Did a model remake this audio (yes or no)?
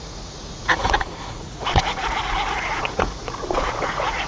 yes